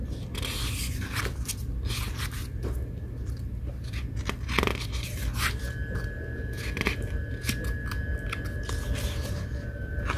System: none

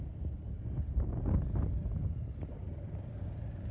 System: none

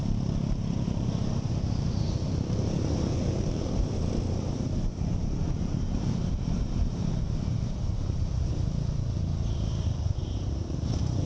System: vocoder, BigVGAN v2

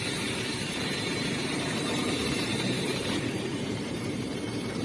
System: vocoder, BigVGAN v2